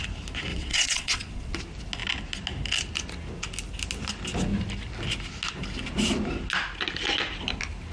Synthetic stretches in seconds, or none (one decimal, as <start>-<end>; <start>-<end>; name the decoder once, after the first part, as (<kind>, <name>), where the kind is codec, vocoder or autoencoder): 0.5-1.6 (vocoder, WaveNeXt)